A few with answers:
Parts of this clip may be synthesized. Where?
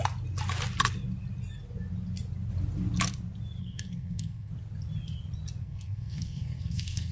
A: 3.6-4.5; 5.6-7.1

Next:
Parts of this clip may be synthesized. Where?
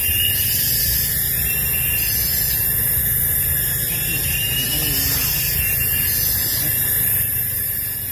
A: none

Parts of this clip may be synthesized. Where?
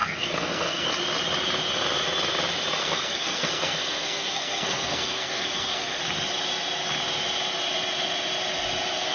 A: 0.0-0.9; 2.8-6.0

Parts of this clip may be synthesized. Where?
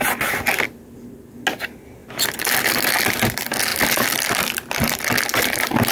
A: none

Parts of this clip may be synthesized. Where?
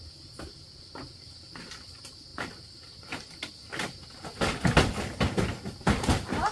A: none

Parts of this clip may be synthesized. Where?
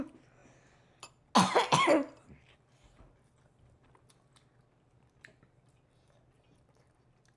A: none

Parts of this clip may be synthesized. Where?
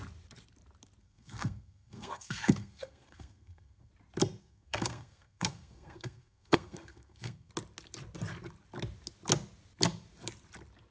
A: 1.0-3.9; 4.4-7.5